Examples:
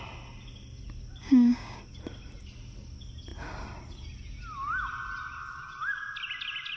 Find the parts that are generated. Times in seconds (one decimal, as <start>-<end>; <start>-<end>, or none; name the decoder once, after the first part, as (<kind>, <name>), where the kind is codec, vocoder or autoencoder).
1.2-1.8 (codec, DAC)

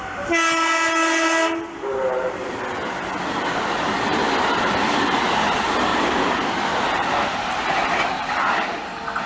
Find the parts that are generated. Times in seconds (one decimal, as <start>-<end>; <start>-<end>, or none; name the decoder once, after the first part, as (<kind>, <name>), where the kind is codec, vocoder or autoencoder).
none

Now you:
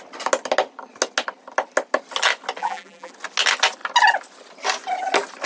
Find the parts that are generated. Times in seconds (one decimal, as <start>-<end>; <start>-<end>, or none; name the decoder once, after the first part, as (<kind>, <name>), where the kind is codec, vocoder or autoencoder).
2.6-3.1 (vocoder, BigVGAN v2)

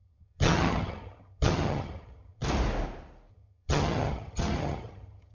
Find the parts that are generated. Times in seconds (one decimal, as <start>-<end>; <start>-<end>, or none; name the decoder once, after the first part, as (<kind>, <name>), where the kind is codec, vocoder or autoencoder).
0.0-2.4 (vocoder, HiFi-GAN); 3.3-5.3

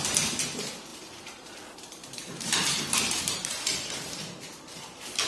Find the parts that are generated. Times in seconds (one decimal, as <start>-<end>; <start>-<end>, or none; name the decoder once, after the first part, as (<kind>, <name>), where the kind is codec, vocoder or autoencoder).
0.9-4.1 (vocoder, BigVGAN v2)

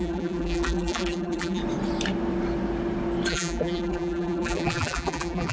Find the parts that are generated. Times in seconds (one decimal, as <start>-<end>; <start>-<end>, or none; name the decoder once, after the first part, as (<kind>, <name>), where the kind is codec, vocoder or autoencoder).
0.0-1.6 (vocoder, BigVGAN v2); 3.3-5.5

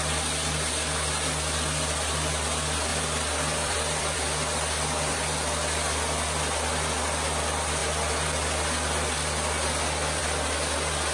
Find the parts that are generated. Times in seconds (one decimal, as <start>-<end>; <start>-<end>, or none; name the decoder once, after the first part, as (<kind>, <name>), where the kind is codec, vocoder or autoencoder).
2.9-5.2 (vocoder, BigVGAN v2)

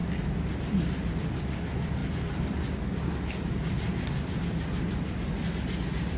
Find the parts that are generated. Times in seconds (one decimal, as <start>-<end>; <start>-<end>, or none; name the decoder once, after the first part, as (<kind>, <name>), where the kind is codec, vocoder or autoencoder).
0.5-6.2 (vocoder, BigVGAN v2)